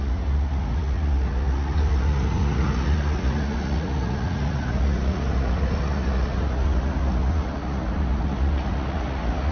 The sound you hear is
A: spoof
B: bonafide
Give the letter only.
A